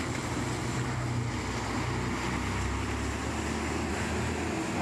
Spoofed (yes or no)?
no